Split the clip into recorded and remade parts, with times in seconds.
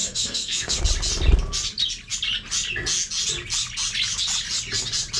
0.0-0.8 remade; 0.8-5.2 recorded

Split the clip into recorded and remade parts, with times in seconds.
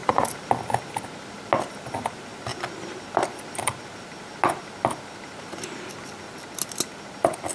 0.0-0.5 remade; 0.5-7.5 recorded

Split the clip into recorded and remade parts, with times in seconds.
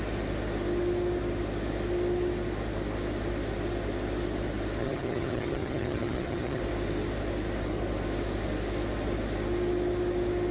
0.0-4.8 recorded; 4.8-6.6 remade; 6.6-10.5 recorded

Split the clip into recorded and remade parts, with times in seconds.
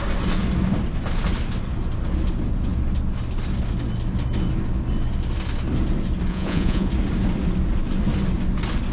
0.0-6.3 recorded; 6.3-6.9 remade; 6.9-8.9 recorded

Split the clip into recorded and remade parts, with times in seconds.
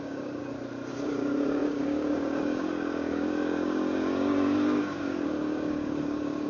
0.0-0.4 remade; 0.4-0.9 recorded; 0.9-6.5 remade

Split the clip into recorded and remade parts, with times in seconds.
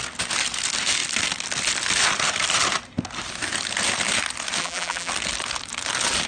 0.0-4.6 recorded; 4.6-5.1 remade; 5.1-6.3 recorded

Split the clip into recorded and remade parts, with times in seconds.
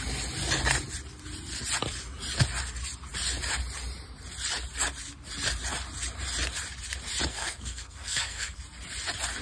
0.0-7.3 recorded; 7.3-8.6 remade; 8.6-9.4 recorded